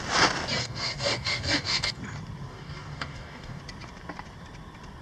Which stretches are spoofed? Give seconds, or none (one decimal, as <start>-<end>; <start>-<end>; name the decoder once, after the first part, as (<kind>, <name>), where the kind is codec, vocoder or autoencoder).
0.6-2.0 (codec, DAC); 2.5-3.6